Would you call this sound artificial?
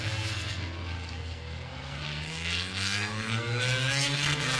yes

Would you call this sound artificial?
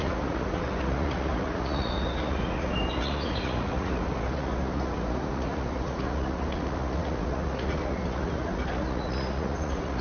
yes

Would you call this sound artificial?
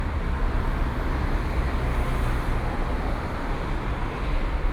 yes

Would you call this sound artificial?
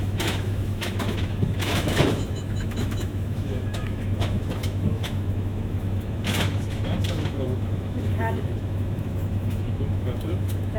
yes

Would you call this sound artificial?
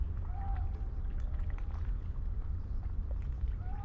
no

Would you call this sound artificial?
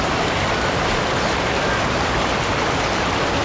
no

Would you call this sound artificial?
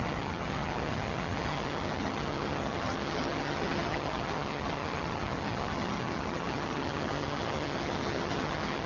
yes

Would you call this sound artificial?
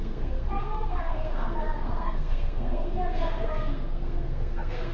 yes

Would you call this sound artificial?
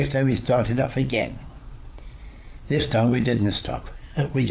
yes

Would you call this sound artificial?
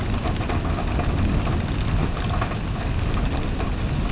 no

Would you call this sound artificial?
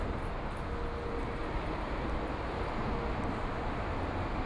no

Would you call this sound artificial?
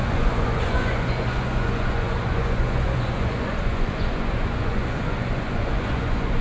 yes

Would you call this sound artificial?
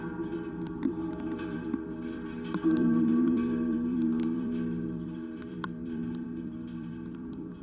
yes